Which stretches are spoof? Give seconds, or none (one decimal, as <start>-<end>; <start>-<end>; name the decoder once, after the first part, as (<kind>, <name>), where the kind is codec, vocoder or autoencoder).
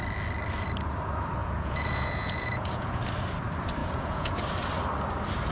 1.4-3.0 (vocoder, Vocos); 3.8-4.4